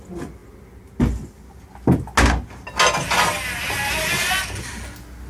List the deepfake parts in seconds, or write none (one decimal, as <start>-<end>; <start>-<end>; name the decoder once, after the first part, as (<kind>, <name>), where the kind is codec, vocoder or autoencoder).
none